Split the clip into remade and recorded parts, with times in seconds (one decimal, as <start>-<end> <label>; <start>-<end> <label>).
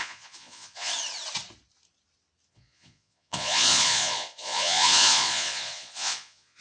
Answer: 0.0-0.9 remade; 0.9-2.5 recorded; 2.5-6.6 remade